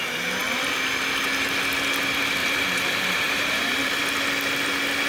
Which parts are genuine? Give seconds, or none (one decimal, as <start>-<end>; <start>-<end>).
0.0-2.4; 4.0-5.1